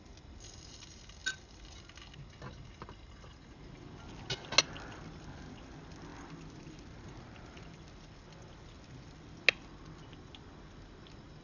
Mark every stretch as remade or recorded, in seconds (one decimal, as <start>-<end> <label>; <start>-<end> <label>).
0.0-11.4 recorded